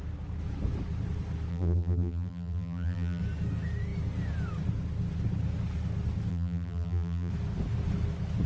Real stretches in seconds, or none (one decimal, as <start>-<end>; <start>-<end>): 0.0-1.5; 3.2-6.3; 7.3-8.5